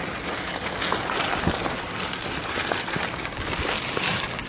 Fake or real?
real